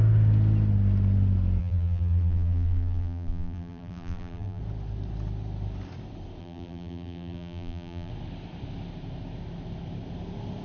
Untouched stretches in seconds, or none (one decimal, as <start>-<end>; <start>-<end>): 0.0-1.6; 4.6-6.4; 8.1-10.6